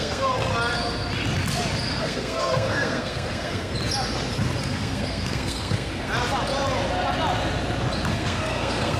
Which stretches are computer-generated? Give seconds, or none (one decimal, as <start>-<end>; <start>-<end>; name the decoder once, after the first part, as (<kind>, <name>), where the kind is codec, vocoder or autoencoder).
0.0-0.5 (codec, SNAC); 2.0-3.7; 4.6-6.1; 8.1-9.0